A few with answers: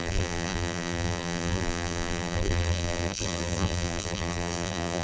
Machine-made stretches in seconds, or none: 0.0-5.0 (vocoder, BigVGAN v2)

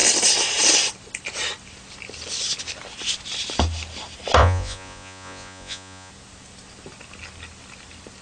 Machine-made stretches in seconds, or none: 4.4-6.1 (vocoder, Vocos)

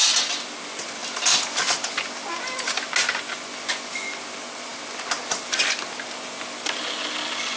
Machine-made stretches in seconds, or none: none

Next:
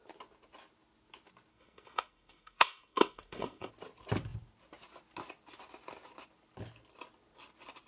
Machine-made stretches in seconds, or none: 1.5-3.7 (codec, SNAC)